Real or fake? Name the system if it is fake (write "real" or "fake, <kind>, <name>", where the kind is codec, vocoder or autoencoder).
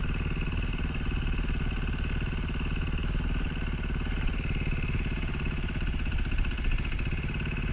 real